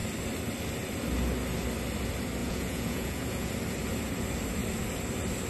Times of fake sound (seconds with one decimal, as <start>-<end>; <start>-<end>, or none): 2.4-3.5